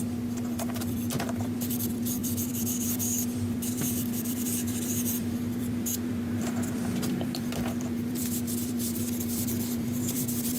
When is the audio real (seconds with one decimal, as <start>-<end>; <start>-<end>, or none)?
none